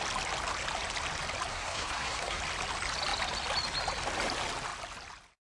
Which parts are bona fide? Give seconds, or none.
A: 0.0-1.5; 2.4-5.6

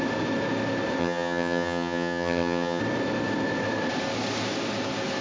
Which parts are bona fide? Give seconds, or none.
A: 0.0-1.0; 2.8-5.2

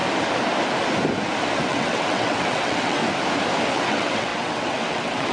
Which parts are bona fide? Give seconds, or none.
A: 0.0-1.7; 3.0-3.7

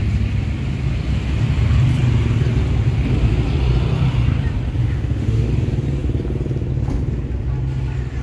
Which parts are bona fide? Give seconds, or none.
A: 0.0-4.8; 5.5-8.2

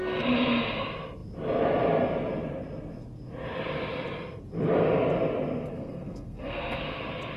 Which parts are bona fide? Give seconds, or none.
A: 0.0-5.7; 7.0-7.4

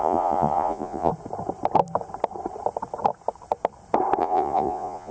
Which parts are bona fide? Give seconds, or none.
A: 1.1-4.2

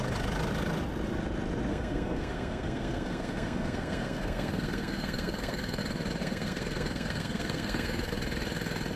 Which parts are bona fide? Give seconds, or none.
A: 0.0-1.7; 5.8-6.2; 8.1-9.0

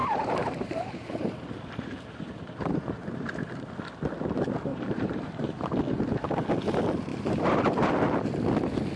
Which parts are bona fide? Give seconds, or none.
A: 3.5-4.7; 5.7-7.1; 7.9-9.0